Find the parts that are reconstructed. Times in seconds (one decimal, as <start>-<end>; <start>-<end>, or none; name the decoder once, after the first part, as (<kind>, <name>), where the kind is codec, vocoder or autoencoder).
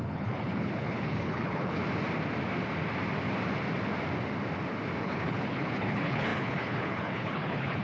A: 0.0-1.8 (codec, HILCodec); 5.0-7.8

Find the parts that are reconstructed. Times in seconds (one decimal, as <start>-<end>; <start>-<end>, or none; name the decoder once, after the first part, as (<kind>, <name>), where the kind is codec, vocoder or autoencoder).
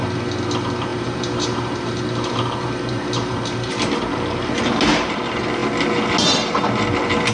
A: 0.9-3.7 (vocoder, BigVGAN v2)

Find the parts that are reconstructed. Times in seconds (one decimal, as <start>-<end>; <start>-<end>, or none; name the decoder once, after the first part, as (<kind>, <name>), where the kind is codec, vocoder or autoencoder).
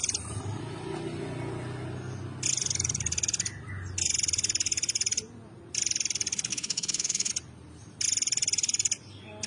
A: 6.5-7.3 (autoencoder, DAC-VAE)